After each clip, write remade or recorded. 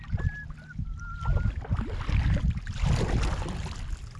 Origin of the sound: recorded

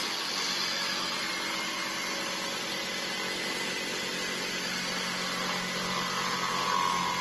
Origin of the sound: recorded